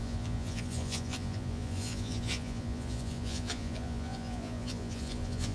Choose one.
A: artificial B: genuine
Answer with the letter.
A